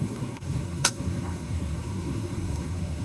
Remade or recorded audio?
remade